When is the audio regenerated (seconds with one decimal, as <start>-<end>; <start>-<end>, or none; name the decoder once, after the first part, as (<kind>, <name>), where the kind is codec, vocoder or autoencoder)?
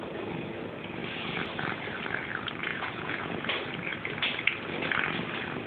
2.7-3.2 (vocoder, Vocos)